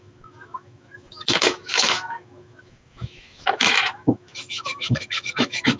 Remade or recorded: remade